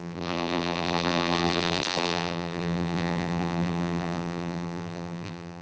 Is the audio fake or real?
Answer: fake